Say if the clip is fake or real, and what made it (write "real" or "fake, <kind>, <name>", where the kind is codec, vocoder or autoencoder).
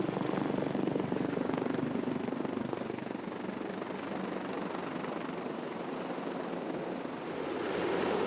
real